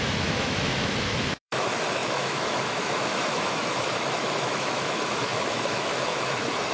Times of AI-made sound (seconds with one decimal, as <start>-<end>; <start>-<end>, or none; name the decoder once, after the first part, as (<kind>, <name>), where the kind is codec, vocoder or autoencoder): 0.0-6.7 (autoencoder, DAC-VAE)